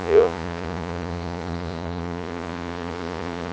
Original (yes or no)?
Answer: no